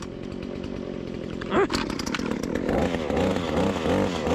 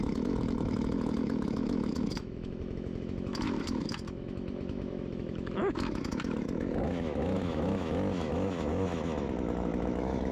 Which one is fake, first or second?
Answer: second